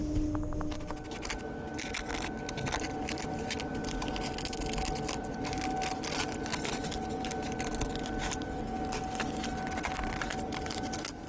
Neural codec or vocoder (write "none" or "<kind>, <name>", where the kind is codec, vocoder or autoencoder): none